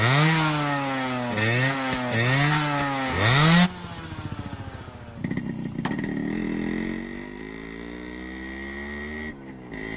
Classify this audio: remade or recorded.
recorded